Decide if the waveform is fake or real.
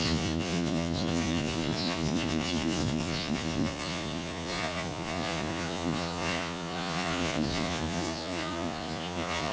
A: fake